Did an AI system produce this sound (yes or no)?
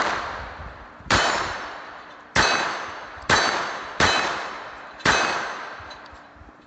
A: yes